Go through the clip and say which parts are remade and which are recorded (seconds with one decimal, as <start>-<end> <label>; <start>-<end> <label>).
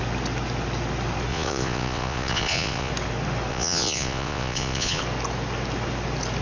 0.0-1.3 recorded; 1.3-2.9 remade; 2.9-3.5 recorded; 3.5-5.0 remade; 5.0-6.4 recorded